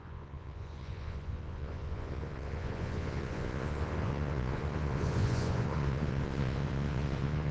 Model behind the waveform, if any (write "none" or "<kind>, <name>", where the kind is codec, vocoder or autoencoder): vocoder, Vocos